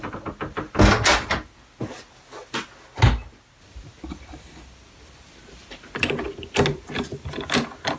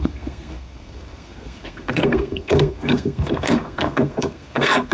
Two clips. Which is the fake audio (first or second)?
second